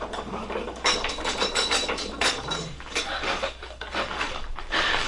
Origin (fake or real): fake